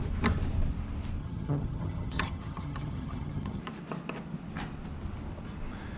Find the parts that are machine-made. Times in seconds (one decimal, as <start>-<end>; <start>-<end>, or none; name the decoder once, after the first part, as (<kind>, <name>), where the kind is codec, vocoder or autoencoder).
1.2-3.6 (vocoder, HiFi-GAN)